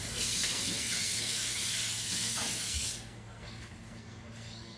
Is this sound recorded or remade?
remade